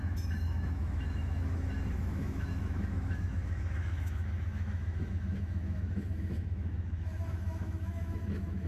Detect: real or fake fake